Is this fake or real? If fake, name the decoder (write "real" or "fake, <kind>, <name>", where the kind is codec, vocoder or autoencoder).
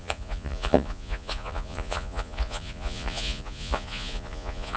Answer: fake, vocoder, Vocos